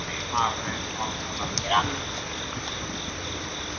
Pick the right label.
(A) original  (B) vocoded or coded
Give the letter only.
A